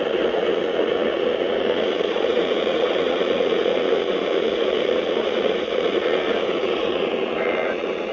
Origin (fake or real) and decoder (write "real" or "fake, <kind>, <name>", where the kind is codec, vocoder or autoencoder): fake, vocoder, Vocos